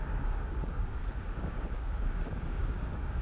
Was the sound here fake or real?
fake